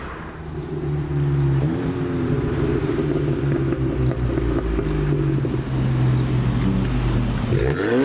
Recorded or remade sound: recorded